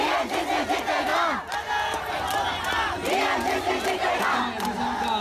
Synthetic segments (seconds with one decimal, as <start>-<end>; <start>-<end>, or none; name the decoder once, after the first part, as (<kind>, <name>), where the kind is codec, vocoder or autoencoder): none